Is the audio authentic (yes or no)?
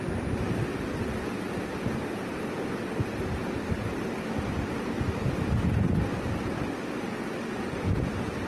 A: yes